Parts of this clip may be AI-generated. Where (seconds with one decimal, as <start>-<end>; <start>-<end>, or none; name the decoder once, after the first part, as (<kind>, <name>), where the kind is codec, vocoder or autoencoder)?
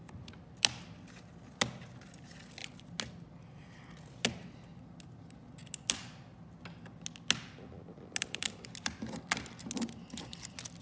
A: none